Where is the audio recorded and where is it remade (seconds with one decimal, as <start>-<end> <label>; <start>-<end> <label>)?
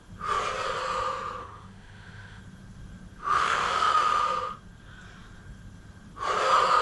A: 0.0-1.4 recorded; 1.4-2.4 remade; 2.4-3.2 recorded; 3.2-4.2 remade; 4.2-6.8 recorded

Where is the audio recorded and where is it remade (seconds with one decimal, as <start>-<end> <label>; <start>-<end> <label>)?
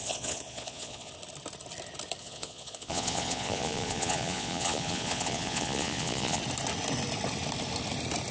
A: 0.0-1.1 remade; 1.1-2.2 recorded; 2.2-6.4 remade; 6.4-8.3 recorded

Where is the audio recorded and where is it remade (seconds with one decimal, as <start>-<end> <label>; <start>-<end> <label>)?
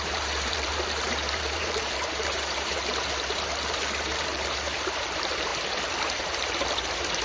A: 0.0-5.5 remade; 5.5-6.2 recorded; 6.2-7.2 remade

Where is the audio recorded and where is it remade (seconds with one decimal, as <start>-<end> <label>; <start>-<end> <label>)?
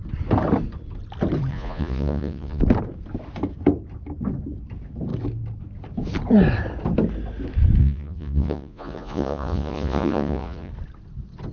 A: 0.0-1.5 recorded; 1.5-2.6 remade; 2.6-7.8 recorded; 7.8-10.7 remade; 10.7-11.5 recorded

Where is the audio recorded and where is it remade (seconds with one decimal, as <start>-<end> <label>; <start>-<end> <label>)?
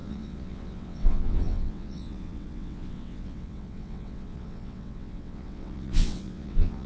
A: 0.0-6.9 remade